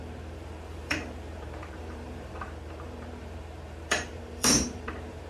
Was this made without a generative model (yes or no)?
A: no